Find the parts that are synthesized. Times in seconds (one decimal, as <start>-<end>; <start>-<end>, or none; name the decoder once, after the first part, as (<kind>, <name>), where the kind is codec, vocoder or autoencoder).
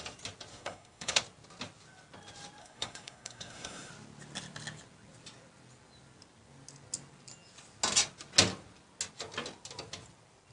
0.5-1.2 (codec, SNAC); 2.6-3.9